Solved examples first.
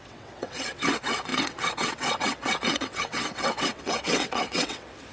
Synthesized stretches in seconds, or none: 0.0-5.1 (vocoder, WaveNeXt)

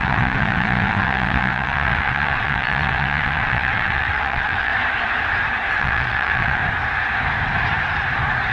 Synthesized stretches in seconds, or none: 0.0-4.7 (vocoder, WaveNeXt); 5.7-6.6

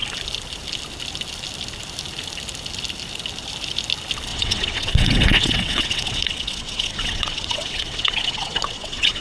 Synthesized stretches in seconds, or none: 4.3-9.2 (vocoder, WaveNeXt)

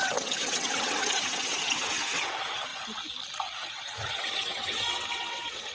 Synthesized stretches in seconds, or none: 0.0-2.7 (vocoder, WaveNeXt); 3.7-5.7